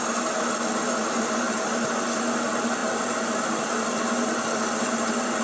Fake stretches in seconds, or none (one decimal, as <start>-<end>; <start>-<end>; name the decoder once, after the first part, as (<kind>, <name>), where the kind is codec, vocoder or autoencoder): none